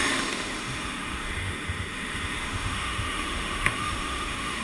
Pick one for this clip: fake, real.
fake